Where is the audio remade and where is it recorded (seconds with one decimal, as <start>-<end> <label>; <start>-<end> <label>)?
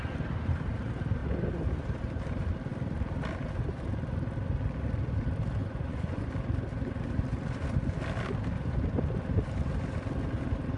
0.0-5.6 recorded; 5.6-6.3 remade; 6.3-10.8 recorded